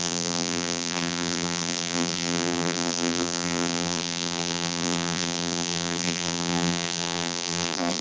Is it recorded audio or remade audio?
remade